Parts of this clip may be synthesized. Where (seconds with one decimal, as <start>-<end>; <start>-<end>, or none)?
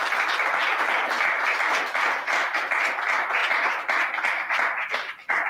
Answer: none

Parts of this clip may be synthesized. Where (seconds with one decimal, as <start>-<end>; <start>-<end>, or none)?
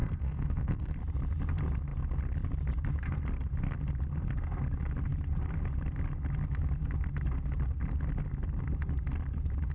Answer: 0.0-0.9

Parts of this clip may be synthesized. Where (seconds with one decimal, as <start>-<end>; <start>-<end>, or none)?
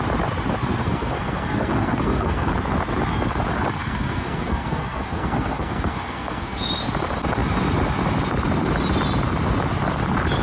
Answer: 0.8-2.5; 3.8-6.7